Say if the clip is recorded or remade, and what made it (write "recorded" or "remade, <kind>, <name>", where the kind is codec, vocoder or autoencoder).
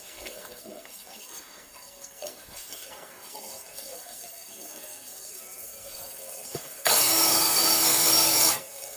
remade, codec, SNAC